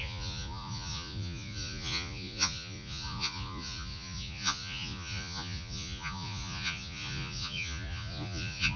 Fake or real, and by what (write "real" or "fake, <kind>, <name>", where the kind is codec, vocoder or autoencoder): fake, vocoder, Vocos